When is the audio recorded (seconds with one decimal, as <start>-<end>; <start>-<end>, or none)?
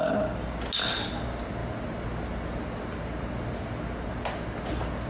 0.0-5.1